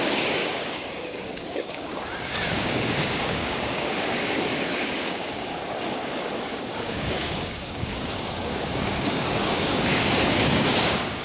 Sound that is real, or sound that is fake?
fake